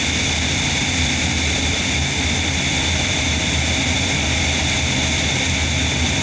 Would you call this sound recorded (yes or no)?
yes